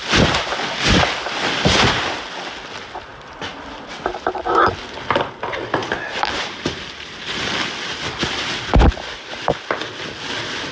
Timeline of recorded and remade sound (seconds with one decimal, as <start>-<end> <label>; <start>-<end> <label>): 0.0-3.1 recorded; 3.1-4.6 remade; 4.6-5.8 recorded; 5.8-7.5 remade; 7.5-10.7 recorded